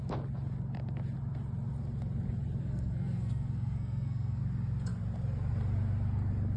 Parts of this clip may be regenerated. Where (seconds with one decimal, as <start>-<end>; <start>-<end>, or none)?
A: 2.6-4.4

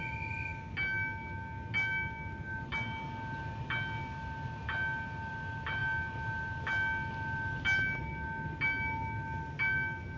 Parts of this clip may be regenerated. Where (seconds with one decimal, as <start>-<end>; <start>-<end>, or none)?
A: none

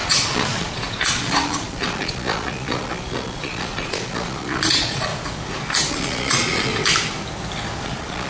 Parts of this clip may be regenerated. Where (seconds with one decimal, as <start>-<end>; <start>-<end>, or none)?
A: 0.0-5.1; 5.9-6.7; 7.8-8.3

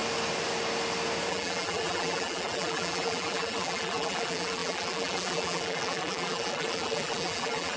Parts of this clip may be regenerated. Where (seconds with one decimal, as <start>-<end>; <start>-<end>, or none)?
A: 1.3-7.8

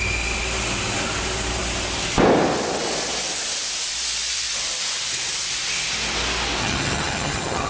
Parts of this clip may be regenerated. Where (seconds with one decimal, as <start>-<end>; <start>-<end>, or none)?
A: 6.6-7.7